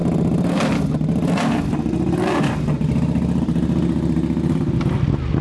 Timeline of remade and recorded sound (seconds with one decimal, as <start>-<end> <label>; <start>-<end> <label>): 0.0-5.4 recorded